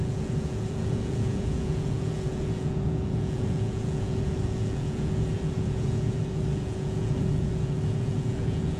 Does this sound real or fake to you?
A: fake